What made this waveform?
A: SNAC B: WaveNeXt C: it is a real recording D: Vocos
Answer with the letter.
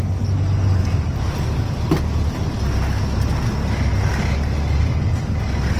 C